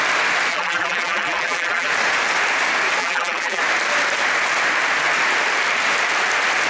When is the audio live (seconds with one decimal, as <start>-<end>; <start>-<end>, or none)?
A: 0.0-0.5; 1.9-3.0; 3.6-6.7